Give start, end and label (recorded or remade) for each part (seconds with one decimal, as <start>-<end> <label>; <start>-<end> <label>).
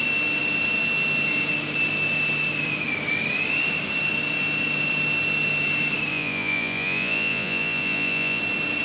0.0-6.1 recorded; 6.1-8.4 remade; 8.4-8.8 recorded